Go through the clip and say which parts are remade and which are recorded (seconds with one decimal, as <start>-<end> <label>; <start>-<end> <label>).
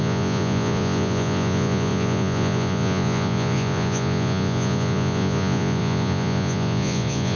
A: 0.0-7.4 remade